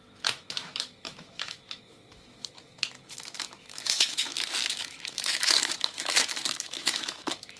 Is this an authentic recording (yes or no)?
no